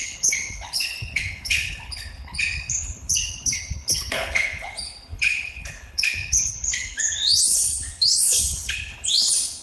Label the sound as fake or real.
fake